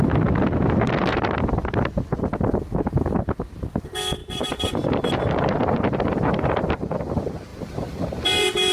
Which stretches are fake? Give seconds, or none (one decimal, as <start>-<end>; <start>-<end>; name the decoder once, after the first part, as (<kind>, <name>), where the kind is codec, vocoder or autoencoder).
4.2-6.4 (vocoder, BigVGAN v2); 7.5-8.2